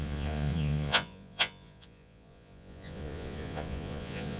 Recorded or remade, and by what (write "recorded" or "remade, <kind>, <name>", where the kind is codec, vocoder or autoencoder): remade, vocoder, Vocos